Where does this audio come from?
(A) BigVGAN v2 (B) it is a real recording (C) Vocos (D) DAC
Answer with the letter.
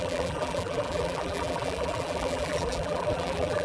A